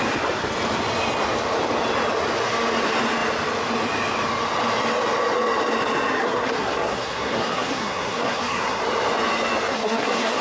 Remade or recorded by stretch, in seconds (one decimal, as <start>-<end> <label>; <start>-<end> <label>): 0.0-6.2 recorded; 6.2-8.8 remade; 8.8-9.7 recorded; 9.7-10.4 remade